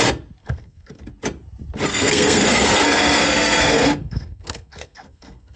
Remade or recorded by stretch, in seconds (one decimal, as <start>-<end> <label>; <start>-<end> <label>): 0.0-0.4 recorded; 0.4-1.0 remade; 1.0-1.9 recorded; 1.9-5.6 remade